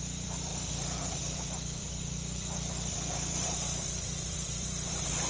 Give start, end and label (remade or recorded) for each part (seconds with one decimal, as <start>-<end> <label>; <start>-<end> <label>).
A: 0.0-5.3 remade